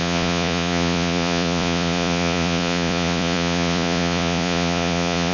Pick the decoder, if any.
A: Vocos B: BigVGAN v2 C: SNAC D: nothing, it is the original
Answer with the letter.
A